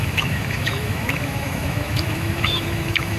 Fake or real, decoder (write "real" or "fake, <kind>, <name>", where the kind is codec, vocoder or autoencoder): fake, autoencoder, DAC-VAE